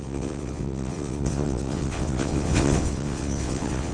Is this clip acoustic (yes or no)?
no